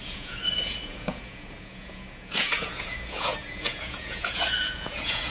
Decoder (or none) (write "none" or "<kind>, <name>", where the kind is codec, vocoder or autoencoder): vocoder, Vocos